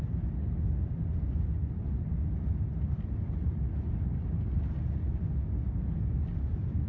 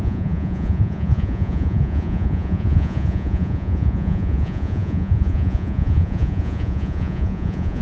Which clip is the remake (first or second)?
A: second